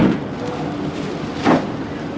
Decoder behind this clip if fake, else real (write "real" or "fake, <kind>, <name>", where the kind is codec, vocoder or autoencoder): real